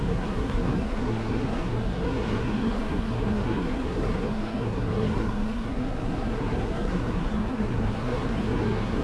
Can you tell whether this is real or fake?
fake